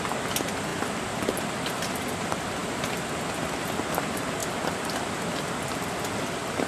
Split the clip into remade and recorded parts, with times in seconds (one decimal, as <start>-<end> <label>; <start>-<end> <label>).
0.0-2.6 recorded; 2.6-3.1 remade; 3.1-4.4 recorded; 4.4-6.7 remade